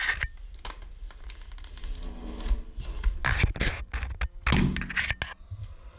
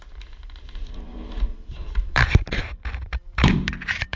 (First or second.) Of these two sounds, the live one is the first